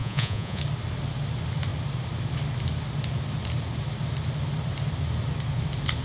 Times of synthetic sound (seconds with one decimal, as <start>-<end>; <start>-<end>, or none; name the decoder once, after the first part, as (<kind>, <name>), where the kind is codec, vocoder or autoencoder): 0.0-0.6 (vocoder, Vocos)